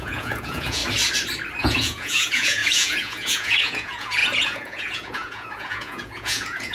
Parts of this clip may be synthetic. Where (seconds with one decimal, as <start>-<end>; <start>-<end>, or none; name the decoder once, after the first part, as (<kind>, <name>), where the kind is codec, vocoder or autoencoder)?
0.0-0.8 (vocoder, Vocos); 1.6-6.7